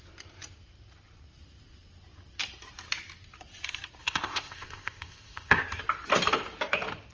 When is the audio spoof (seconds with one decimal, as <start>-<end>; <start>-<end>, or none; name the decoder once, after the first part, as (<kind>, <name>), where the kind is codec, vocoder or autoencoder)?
4.0-5.6 (codec, ZipCodec)